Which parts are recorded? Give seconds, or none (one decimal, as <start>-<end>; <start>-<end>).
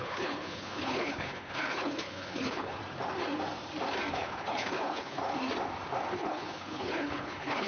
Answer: 2.8-4.1; 5.2-6.1